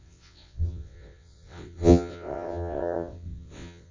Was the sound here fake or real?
fake